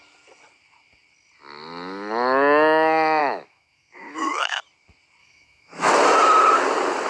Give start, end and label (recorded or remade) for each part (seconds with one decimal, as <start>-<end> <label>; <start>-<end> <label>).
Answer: 0.0-3.2 recorded; 3.2-4.6 remade; 4.6-5.2 recorded; 5.2-5.9 remade; 5.9-7.1 recorded